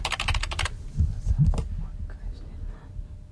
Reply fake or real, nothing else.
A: real